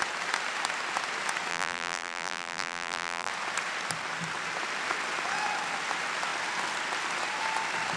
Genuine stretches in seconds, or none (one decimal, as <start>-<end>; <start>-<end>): 0.0-1.5; 3.3-8.0